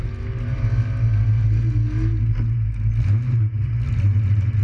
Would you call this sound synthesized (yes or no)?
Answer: no